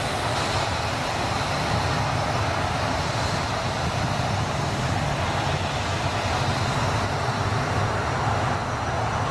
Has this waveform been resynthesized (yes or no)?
no